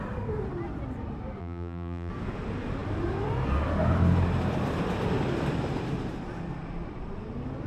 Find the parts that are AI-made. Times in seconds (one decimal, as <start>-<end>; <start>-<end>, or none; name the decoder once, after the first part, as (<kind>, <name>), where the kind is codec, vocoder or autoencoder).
1.4-2.1 (vocoder, BigVGAN v2)